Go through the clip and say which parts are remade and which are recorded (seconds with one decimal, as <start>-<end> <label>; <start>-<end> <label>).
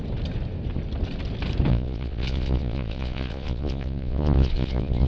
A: 0.0-1.7 recorded; 1.7-5.1 remade